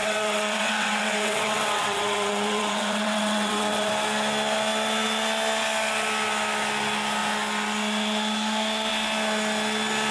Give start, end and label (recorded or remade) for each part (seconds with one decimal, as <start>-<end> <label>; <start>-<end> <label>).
0.0-3.9 remade; 3.9-10.1 recorded